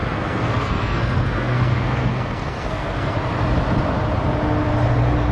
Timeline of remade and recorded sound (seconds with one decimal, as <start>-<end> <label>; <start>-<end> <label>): 0.0-3.2 remade; 3.2-5.3 recorded